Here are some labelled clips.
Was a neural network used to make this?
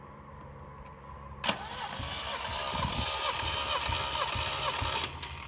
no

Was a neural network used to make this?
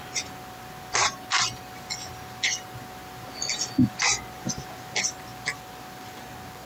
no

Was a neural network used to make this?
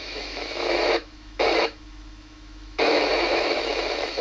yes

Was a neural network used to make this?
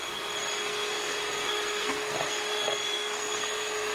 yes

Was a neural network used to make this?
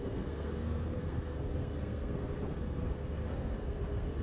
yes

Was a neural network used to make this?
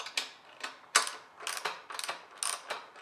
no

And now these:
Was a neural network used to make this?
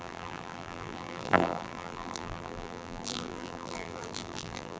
yes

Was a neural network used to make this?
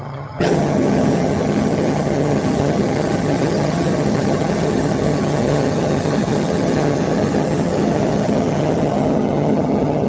yes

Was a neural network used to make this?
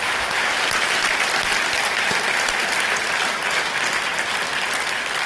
no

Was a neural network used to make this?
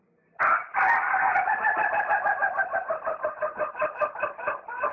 no